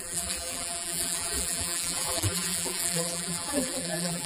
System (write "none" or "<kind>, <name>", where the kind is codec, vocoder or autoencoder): vocoder, BigVGAN v2